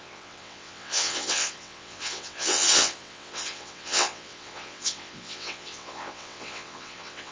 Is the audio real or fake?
fake